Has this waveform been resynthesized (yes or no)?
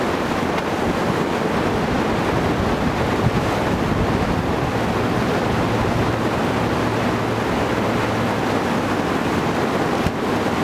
no